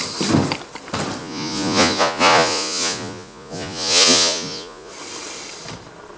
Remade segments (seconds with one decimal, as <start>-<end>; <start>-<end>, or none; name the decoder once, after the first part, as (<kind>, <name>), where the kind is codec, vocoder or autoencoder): 1.2-4.9 (vocoder, Vocos)